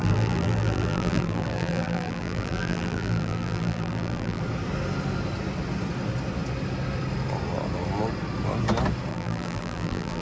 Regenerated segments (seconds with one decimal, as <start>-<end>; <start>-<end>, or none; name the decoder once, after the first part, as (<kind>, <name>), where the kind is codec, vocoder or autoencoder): 0.0-4.4 (vocoder, BigVGAN v2); 9.1-10.2